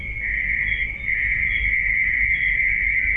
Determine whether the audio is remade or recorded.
recorded